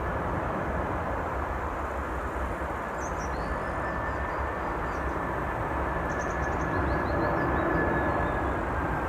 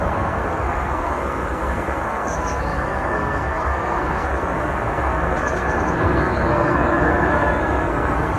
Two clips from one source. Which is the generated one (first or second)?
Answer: second